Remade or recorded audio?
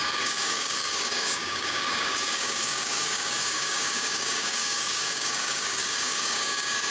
remade